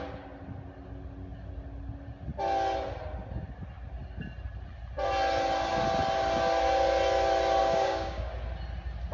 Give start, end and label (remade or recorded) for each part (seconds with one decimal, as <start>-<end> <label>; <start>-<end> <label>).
0.0-7.6 recorded; 7.6-8.3 remade; 8.3-9.1 recorded

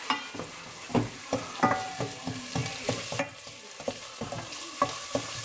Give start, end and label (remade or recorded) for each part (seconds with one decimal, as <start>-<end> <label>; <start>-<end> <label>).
0.0-5.4 recorded

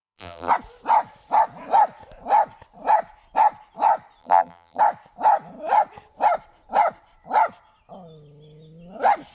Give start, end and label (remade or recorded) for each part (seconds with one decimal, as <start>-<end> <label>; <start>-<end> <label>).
0.0-0.5 remade; 0.5-4.2 recorded; 4.2-4.8 remade; 4.8-9.3 recorded

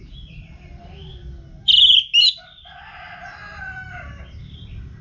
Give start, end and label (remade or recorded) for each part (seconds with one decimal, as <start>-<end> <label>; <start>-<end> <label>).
0.0-3.4 recorded; 3.4-4.2 remade; 4.2-5.0 recorded